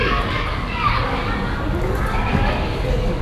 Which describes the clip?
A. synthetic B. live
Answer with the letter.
A